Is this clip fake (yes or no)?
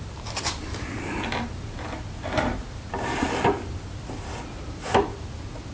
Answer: no